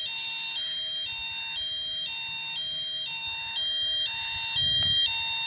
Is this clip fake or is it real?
real